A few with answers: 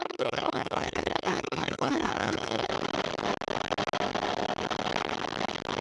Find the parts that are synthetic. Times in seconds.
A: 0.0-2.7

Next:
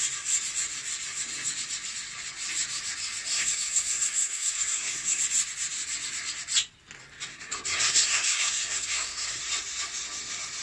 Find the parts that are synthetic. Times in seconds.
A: 3.3-5.2; 7.3-9.4

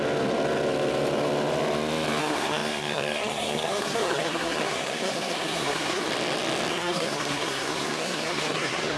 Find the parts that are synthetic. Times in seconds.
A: 2.2-6.1; 6.7-9.0

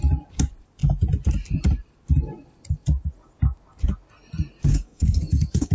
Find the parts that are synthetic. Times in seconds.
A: 4.7-5.7